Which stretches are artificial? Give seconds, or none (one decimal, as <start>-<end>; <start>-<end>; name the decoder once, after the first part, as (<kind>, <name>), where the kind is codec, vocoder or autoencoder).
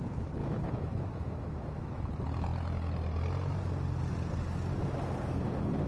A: 0.4-2.0 (autoencoder, DAC-VAE)